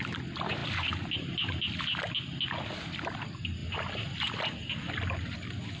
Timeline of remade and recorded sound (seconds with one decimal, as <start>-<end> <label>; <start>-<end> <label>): 0.0-5.8 recorded